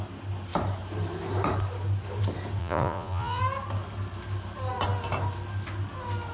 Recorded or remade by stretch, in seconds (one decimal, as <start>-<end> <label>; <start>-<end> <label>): 0.0-2.6 recorded; 2.6-3.4 remade; 3.4-6.3 recorded